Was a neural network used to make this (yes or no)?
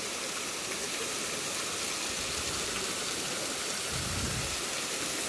no